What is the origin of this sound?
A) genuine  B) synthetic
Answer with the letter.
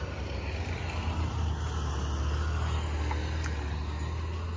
A